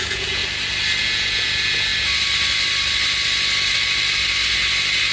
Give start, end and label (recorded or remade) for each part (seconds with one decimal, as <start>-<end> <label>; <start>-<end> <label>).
0.0-0.4 remade; 0.4-1.0 recorded; 1.0-1.9 remade; 1.9-5.1 recorded